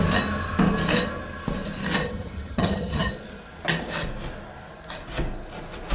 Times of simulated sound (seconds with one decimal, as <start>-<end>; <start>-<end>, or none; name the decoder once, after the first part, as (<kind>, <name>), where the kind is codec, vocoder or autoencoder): 2.0-3.1 (vocoder, HiFi-GAN)